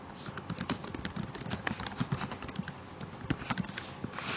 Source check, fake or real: real